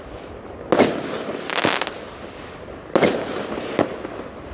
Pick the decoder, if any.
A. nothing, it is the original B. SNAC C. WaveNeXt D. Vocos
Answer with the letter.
A